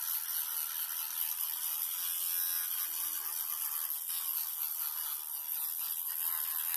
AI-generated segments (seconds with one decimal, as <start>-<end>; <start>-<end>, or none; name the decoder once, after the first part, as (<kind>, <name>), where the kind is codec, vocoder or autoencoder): none